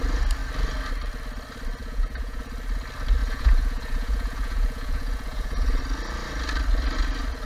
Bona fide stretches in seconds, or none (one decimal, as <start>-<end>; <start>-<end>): 0.0-1.8; 2.4-3.2; 5.8-7.5